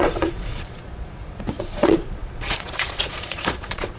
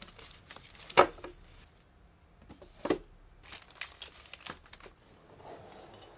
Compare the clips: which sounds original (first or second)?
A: second